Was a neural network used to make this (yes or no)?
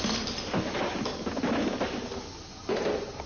no